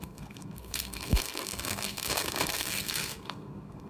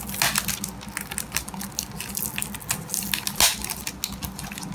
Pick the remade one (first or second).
first